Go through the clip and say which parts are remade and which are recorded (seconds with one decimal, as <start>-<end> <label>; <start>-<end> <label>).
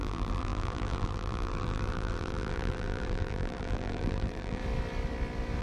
0.0-4.6 remade; 4.6-5.6 recorded